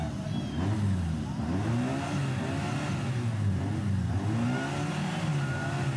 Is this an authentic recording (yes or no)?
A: yes